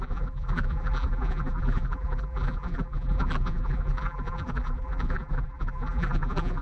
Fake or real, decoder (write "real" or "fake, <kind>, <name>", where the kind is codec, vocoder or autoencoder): fake, vocoder, BigVGAN v2